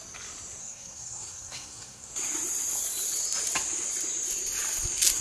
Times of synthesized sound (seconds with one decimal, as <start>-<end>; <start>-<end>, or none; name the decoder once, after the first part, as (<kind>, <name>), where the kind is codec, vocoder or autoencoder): 0.6-2.1 (codec, SNAC)